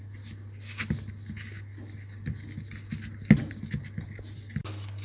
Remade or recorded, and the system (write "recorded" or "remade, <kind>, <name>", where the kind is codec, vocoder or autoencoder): recorded